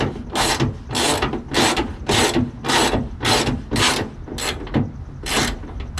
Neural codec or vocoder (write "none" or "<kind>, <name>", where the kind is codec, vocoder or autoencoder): none